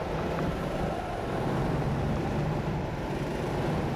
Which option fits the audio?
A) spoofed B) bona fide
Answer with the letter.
A